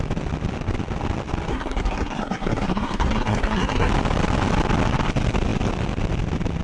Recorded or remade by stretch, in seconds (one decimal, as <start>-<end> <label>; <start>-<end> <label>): 0.0-1.5 recorded; 1.5-3.9 remade; 3.9-6.6 recorded